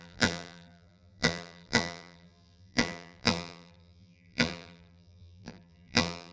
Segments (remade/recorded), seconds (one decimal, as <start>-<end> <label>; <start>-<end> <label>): 0.0-6.3 remade